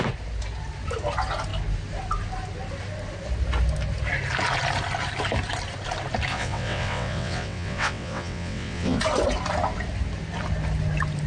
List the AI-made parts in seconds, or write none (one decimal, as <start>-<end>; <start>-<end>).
6.3-9.0